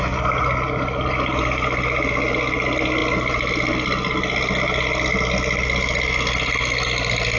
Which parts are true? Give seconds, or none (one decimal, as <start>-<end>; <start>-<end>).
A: 0.0-7.4